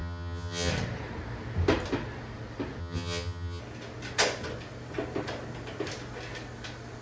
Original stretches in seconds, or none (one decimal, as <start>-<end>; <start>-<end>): 0.7-2.8; 3.6-7.0